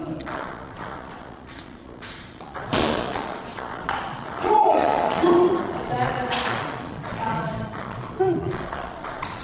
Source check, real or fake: fake